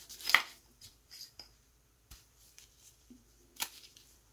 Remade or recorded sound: remade